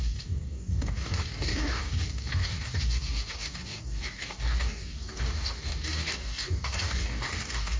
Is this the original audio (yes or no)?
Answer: no